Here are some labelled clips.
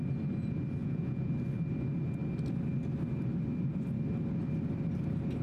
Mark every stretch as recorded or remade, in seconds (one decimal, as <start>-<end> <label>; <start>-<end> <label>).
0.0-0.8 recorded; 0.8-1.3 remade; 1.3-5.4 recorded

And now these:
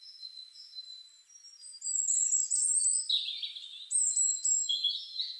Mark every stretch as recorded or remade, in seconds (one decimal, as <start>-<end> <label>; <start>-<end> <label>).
0.0-0.7 remade; 0.7-3.9 recorded; 3.9-5.4 remade

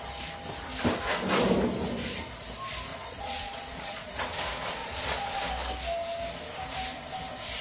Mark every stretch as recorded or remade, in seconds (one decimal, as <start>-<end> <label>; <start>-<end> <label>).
0.0-2.9 recorded; 2.9-4.1 remade; 4.1-4.8 recorded; 4.8-5.4 remade; 5.4-7.6 recorded